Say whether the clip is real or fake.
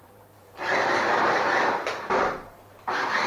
fake